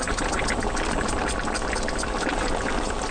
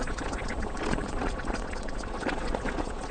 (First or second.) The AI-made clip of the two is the second